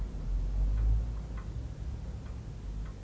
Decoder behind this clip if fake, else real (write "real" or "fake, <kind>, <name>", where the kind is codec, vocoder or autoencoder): real